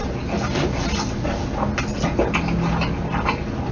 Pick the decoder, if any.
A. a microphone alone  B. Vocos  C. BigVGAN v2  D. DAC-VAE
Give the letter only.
A